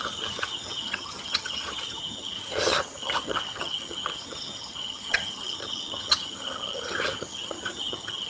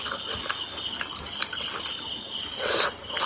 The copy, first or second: first